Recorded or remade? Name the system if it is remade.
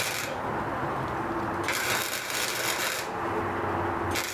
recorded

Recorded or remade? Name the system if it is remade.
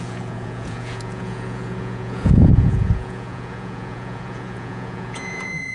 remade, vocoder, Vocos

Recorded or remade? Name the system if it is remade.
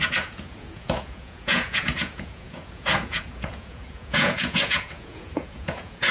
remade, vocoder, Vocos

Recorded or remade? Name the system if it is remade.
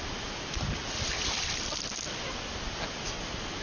recorded